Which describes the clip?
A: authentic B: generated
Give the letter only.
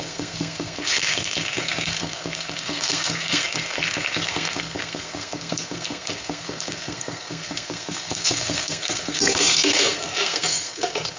B